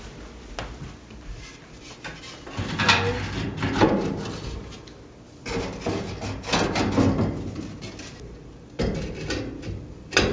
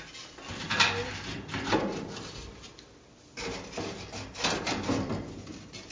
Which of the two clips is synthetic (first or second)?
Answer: second